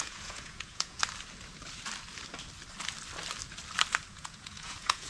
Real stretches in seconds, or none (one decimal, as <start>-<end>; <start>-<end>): 1.0-4.1